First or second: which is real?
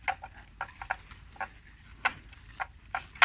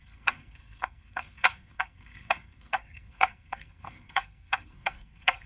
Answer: first